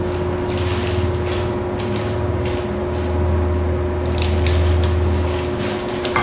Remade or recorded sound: recorded